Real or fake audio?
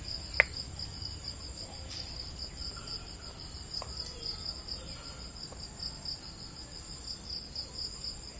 real